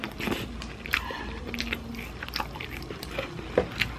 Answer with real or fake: real